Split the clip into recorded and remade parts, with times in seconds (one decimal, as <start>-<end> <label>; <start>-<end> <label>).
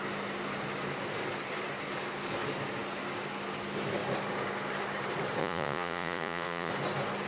0.0-5.4 recorded; 5.4-6.7 remade; 6.7-7.3 recorded